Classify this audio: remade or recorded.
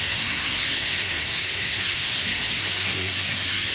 remade